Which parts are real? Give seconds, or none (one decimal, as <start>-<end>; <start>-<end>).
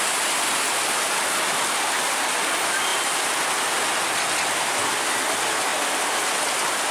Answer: 0.0-6.9